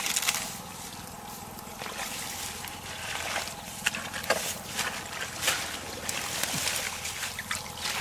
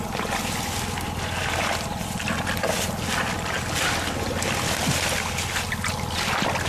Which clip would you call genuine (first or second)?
second